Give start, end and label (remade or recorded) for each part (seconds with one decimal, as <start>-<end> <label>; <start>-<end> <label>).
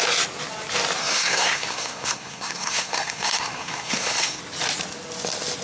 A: 0.0-1.0 recorded; 1.0-4.4 remade; 4.4-5.6 recorded